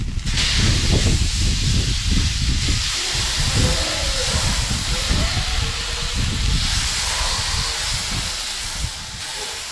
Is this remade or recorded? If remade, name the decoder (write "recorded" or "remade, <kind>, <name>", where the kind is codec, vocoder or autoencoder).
recorded